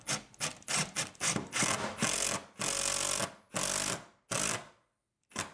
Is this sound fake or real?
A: real